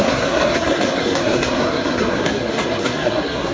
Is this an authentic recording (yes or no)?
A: no